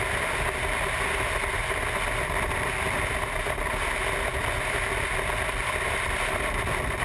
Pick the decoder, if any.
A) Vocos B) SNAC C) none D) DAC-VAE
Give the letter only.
C